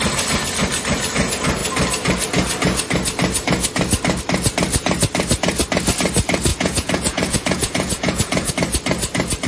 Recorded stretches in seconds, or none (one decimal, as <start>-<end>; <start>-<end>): 0.0-6.5; 8.5-9.5

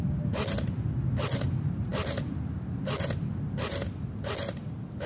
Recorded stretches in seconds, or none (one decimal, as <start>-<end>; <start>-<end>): 0.0-5.1

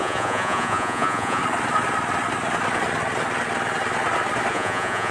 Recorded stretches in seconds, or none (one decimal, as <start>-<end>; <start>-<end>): 1.4-4.5

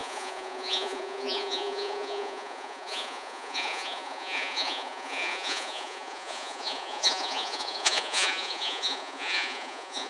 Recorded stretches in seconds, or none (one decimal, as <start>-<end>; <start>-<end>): none